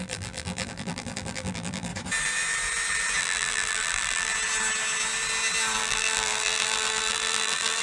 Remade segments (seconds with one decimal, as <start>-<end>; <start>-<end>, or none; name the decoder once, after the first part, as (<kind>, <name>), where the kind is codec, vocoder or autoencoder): 0.0-1.9 (vocoder, BigVGAN v2); 3.2-4.3; 5.8-7.8